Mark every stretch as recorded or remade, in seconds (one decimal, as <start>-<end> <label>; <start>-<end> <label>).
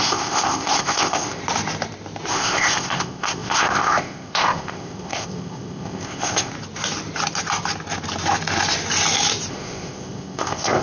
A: 0.0-1.4 remade; 1.4-2.3 recorded; 2.3-6.5 remade; 6.5-9.5 recorded; 9.5-10.8 remade